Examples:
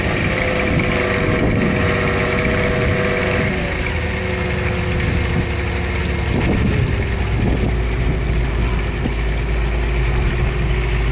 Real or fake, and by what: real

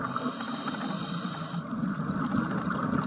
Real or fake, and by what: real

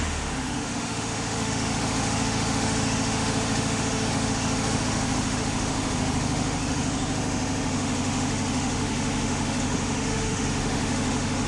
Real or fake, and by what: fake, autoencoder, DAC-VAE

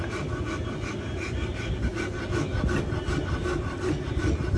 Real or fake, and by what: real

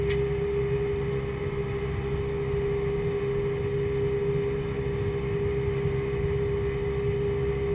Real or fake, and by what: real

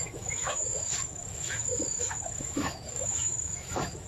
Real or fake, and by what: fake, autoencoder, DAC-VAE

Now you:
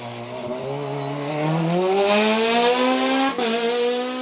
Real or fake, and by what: real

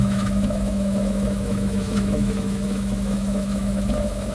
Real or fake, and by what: fake, autoencoder, DAC-VAE